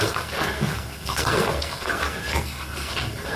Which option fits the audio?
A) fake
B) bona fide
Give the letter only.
A